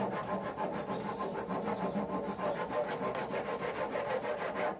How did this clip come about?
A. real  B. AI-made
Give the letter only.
A